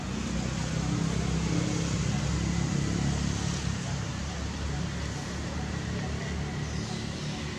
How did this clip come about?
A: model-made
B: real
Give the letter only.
B